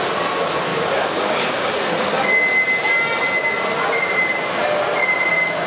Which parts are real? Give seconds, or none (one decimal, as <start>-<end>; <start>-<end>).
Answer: 0.0-0.7; 1.7-5.7